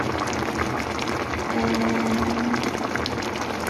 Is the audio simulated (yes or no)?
no